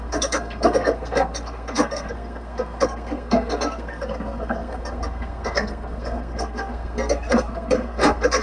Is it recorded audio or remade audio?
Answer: remade